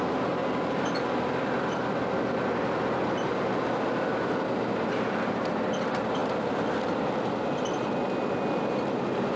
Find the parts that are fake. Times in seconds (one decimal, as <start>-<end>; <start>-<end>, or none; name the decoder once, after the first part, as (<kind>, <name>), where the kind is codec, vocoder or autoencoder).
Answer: none

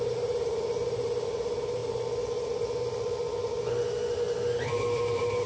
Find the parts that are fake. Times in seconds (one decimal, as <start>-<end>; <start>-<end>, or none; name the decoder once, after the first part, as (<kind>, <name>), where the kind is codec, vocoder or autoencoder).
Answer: 0.0-1.8 (vocoder, BigVGAN v2); 5.1-5.5

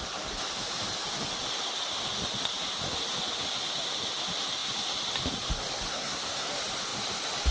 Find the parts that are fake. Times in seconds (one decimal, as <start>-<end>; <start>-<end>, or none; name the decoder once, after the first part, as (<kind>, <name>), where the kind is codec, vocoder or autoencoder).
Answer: 5.9-6.5 (codec, SNAC)

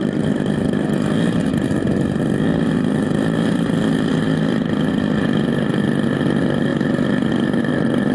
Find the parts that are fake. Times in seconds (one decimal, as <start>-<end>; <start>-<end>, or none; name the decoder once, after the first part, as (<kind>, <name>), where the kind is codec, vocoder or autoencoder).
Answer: none

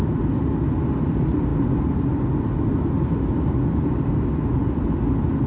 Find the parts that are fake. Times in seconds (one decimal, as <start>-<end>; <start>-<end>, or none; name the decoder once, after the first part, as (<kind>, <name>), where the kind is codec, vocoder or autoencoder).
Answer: none

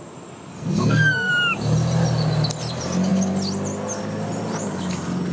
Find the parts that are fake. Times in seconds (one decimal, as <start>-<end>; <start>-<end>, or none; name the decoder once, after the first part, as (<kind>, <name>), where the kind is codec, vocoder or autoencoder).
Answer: 0.5-1.3 (codec, SNAC)

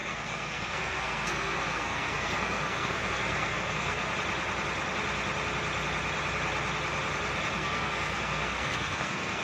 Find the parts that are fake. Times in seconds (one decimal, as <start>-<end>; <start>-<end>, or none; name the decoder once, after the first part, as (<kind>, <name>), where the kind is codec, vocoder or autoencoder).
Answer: 0.0-4.0 (codec, SNAC); 7.5-9.4

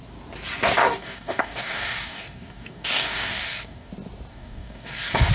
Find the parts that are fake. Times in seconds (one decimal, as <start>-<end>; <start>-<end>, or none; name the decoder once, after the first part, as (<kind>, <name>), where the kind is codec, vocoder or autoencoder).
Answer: 0.8-3.9 (codec, DAC); 4.3-5.3